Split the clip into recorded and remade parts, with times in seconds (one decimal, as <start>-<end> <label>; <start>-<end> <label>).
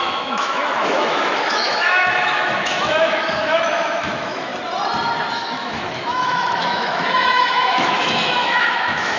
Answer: 0.0-4.5 remade; 4.5-5.3 recorded; 5.3-9.2 remade